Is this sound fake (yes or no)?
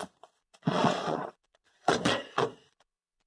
yes